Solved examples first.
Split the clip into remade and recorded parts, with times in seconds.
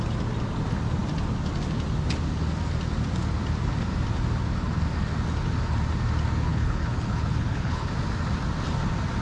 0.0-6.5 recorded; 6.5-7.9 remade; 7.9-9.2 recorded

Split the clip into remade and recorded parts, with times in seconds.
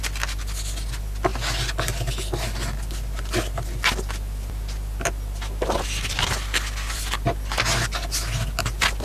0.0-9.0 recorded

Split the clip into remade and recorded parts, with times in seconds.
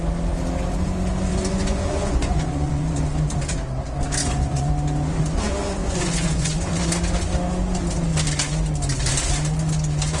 0.0-1.3 recorded; 1.3-3.0 remade; 3.0-4.2 recorded; 4.2-4.7 remade; 4.7-5.8 recorded; 5.8-6.9 remade; 6.9-10.2 recorded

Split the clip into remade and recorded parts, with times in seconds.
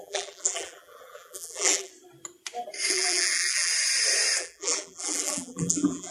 0.0-1.9 remade; 1.9-2.9 recorded; 2.9-3.7 remade; 3.7-4.4 recorded; 4.4-6.1 remade